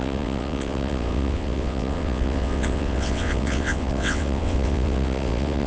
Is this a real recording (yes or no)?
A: no